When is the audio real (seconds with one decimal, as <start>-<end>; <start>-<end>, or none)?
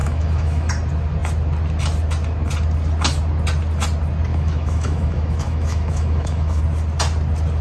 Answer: 0.7-4.3; 6.6-7.6